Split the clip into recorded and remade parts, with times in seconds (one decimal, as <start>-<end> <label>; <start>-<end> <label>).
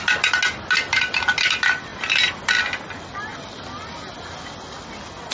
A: 0.0-5.3 recorded